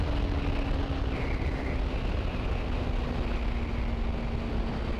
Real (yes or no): yes